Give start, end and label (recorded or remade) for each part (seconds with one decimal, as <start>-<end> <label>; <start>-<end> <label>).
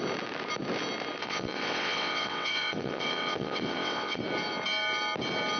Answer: 0.0-1.2 recorded; 1.2-4.2 remade; 4.2-5.6 recorded